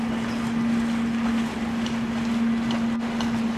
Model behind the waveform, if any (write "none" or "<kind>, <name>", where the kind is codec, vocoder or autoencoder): none